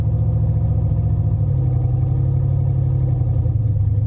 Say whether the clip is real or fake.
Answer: real